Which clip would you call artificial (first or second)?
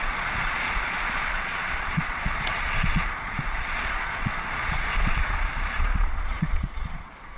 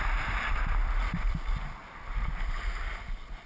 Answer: first